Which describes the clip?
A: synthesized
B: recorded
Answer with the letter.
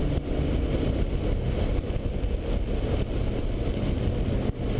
B